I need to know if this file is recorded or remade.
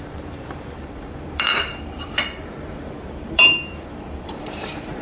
remade